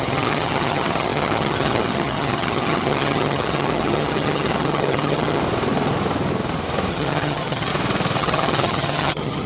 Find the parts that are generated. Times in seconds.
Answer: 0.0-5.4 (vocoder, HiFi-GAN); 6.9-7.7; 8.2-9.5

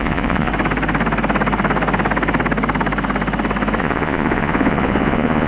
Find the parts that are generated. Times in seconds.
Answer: 0.0-0.5 (vocoder, Vocos); 3.8-5.5

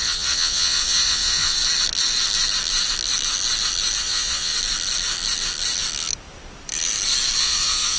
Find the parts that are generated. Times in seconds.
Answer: 0.0-1.6 (vocoder, Vocos); 4.0-4.5; 7.4-8.0

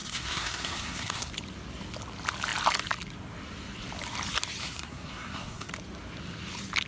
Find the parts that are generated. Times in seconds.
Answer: 0.0-1.3 (codec, SNAC); 4.6-5.7

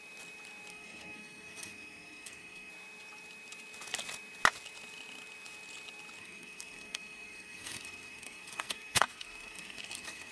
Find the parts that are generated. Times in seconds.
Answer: 0.7-2.7 (codec, SNAC); 6.2-10.3

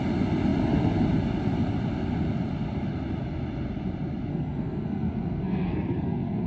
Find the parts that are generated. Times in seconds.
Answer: 4.3-6.5 (codec, SNAC)

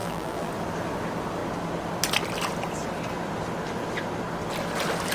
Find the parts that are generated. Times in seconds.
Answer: 0.0-0.5 (vocoder, BigVGAN v2)

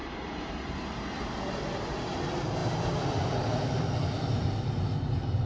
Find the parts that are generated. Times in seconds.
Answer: 0.0-1.4 (vocoder, BigVGAN v2)